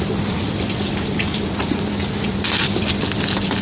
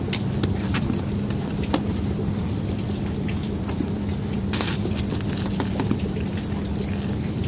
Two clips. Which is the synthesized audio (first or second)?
first